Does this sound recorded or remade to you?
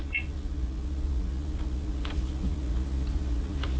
remade